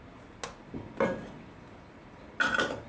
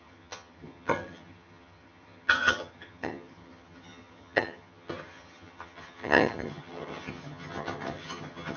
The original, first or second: first